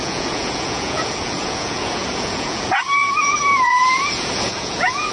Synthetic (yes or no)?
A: yes